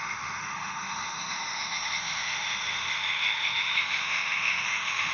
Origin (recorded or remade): remade